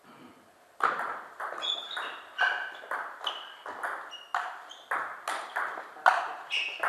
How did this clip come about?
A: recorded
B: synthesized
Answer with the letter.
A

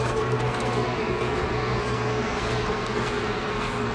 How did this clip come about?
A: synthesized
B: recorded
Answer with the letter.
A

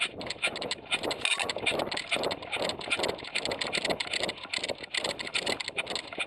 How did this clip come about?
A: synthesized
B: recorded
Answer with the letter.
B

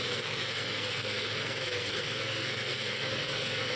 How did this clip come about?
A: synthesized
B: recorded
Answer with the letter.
A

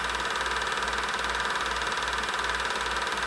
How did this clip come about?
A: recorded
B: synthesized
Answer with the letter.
A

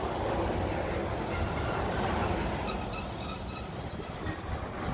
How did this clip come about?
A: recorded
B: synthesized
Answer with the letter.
A